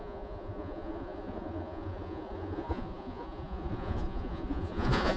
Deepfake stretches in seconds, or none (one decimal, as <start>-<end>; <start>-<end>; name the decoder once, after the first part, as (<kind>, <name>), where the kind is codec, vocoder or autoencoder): 0.0-5.2 (vocoder, Vocos)